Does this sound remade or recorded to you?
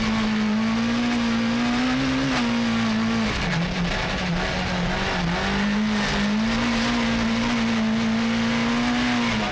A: recorded